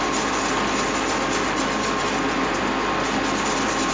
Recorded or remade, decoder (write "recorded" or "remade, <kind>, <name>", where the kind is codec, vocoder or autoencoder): recorded